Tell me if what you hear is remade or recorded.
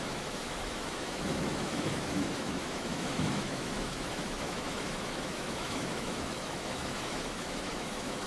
remade